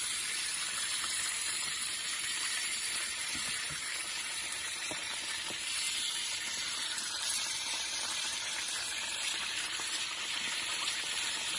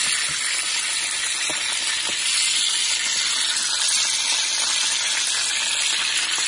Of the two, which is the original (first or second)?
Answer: second